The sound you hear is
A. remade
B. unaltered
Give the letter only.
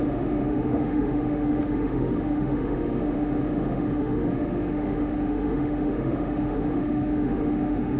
A